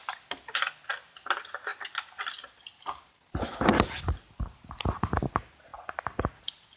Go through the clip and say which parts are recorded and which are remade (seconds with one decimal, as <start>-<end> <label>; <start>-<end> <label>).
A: 0.0-6.8 recorded